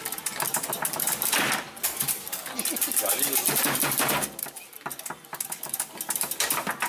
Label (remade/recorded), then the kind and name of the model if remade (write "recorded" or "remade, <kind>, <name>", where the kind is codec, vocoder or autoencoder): recorded